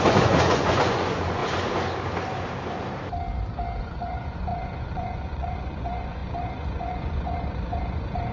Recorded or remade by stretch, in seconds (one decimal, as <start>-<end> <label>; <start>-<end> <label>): 0.0-1.4 remade; 1.4-3.8 recorded; 3.8-8.3 remade